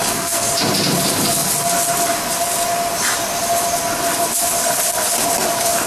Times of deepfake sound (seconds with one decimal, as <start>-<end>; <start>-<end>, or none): 0.0-0.5